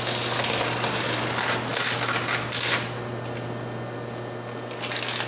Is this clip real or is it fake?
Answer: real